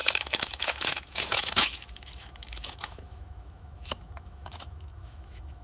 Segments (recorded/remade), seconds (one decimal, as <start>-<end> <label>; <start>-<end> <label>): 0.0-5.6 remade